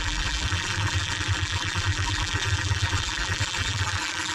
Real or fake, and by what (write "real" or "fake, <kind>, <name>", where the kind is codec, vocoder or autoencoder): fake, vocoder, BigVGAN v2